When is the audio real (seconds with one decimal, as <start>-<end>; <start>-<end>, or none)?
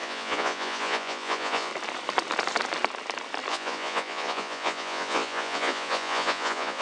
1.7-3.5